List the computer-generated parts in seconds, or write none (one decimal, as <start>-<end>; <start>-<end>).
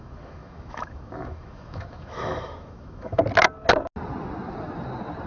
0.0-3.2